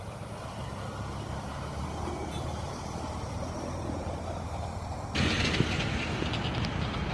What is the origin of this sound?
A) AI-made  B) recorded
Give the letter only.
B